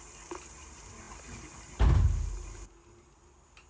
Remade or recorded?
recorded